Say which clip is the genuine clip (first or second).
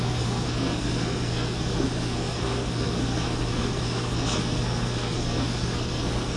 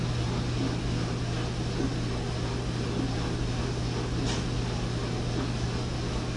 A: second